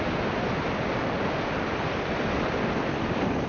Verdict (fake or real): fake